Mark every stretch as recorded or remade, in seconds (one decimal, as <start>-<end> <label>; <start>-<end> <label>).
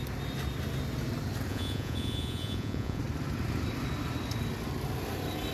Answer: 0.0-1.5 recorded; 1.5-3.0 remade; 3.0-5.5 recorded